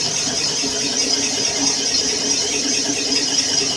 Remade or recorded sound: recorded